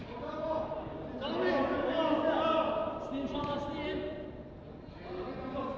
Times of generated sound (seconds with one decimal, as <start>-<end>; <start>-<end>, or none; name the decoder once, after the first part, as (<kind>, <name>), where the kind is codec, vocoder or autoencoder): none

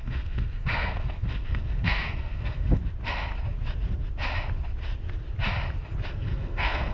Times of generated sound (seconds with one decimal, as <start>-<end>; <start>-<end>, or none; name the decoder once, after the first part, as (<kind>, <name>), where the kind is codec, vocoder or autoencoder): 0.0-2.8 (codec, SNAC); 6.1-6.9

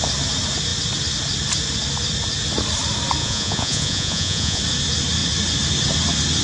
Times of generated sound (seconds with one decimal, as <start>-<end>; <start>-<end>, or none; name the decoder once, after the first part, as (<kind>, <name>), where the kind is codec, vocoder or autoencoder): 3.2-4.6 (vocoder, Vocos)

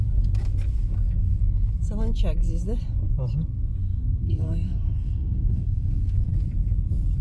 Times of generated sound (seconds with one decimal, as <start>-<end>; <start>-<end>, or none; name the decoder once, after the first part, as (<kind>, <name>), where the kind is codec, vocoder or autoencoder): 3.8-6.3 (codec, SNAC)

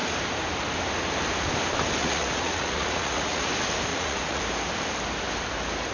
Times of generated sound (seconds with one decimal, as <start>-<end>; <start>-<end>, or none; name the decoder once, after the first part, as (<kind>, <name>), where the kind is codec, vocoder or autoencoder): 2.0-3.5 (vocoder, Vocos); 3.9-4.4

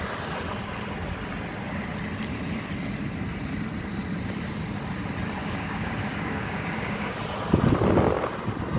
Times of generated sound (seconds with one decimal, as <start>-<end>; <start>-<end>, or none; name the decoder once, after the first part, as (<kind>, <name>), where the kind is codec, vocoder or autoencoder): 5.4-7.2 (codec, DAC)

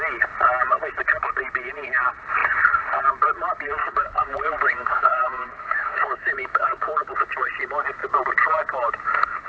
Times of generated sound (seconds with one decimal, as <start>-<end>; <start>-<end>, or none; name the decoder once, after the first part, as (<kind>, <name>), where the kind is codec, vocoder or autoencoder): 3.8-7.2 (autoencoder, DAC-VAE)